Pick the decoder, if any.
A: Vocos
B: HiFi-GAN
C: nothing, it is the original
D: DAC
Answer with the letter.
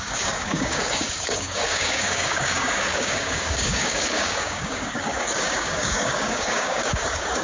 D